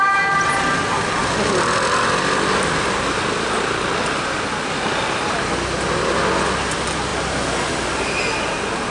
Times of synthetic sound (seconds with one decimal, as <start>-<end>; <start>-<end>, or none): none